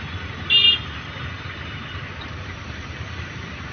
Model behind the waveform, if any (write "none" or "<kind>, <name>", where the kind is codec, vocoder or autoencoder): none